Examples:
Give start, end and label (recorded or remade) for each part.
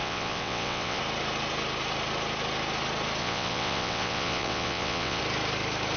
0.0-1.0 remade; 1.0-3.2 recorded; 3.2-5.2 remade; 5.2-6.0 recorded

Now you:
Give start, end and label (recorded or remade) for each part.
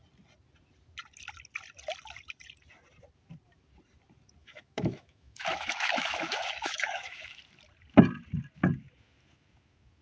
0.0-4.4 recorded; 4.4-7.4 remade; 7.4-10.0 recorded